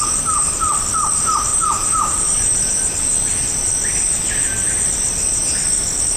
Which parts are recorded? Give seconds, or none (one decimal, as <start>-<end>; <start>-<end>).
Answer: 0.0-1.5; 2.7-6.2